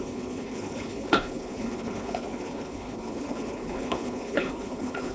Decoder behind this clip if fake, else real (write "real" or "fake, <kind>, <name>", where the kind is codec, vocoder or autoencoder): fake, codec, HILCodec